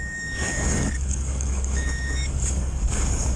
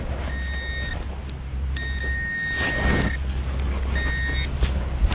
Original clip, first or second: second